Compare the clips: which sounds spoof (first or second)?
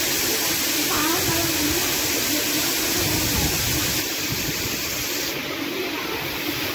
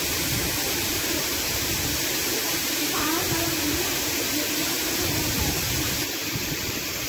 second